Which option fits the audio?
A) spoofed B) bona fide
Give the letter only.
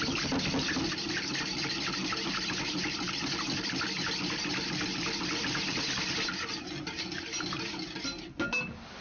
B